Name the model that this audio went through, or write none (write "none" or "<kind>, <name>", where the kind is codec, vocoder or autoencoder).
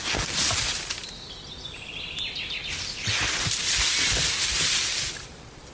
none